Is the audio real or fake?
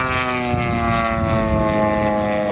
real